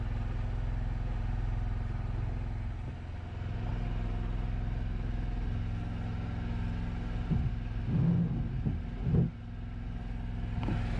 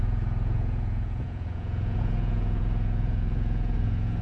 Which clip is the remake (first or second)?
second